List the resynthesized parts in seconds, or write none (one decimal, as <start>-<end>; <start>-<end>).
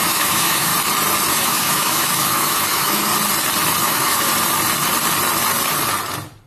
0.0-0.7; 1.3-3.1; 3.8-4.3